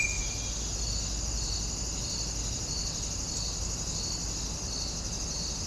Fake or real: real